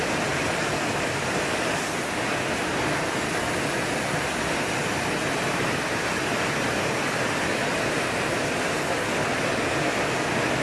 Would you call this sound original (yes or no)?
yes